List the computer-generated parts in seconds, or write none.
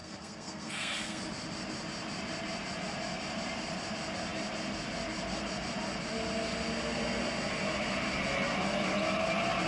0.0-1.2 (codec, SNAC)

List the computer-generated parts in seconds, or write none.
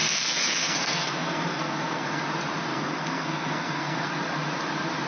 0.0-2.2 (codec, SNAC); 2.7-4.1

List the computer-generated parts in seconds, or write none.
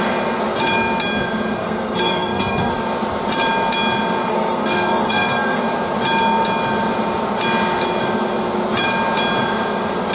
1.6-2.7 (codec, SNAC); 4.3-5.6